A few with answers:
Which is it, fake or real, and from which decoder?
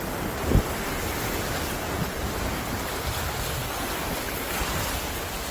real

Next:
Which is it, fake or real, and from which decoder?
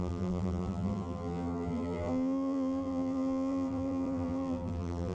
fake, vocoder, BigVGAN v2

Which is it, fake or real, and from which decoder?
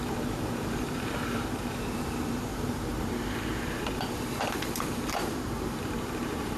fake, vocoder, BigVGAN v2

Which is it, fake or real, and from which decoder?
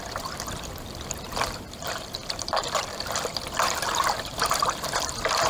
fake, vocoder, BigVGAN v2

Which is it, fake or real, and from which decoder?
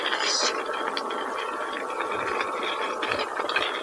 fake, vocoder, BigVGAN v2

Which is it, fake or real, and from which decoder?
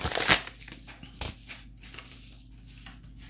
real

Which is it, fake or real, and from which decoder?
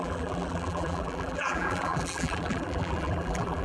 fake, vocoder, BigVGAN v2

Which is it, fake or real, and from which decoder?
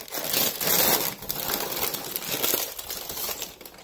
real